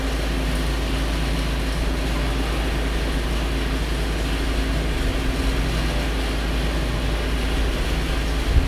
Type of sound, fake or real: real